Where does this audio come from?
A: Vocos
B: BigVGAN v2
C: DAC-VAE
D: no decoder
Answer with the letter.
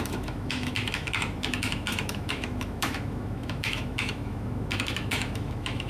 C